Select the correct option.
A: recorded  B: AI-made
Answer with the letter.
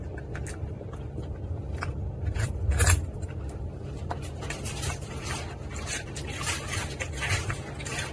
A